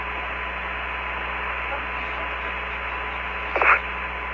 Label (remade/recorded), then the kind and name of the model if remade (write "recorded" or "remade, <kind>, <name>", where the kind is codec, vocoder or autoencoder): recorded